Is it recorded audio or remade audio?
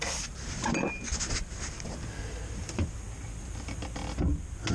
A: recorded